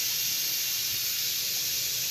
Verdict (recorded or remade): recorded